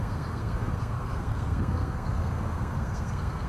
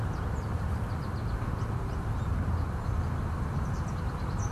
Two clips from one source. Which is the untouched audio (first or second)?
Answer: second